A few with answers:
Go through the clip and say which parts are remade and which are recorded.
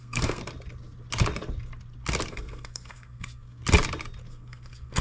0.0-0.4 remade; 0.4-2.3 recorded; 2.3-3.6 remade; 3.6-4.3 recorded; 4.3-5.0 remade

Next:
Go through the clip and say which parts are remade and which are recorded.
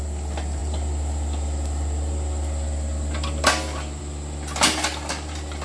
0.0-5.6 recorded